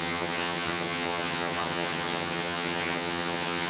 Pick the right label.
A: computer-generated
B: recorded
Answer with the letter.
A